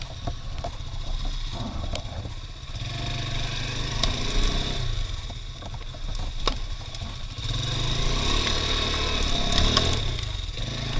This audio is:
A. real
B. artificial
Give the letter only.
A